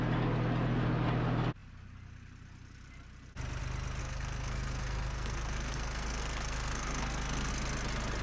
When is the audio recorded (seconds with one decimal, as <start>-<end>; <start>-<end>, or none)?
0.0-4.0; 7.5-8.2